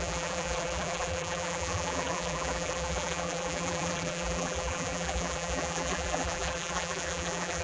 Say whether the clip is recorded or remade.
remade